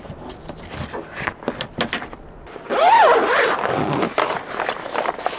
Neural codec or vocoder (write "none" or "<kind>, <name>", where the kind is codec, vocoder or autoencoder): none